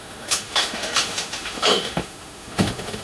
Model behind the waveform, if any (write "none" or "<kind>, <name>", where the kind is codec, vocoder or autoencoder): autoencoder, DAC-VAE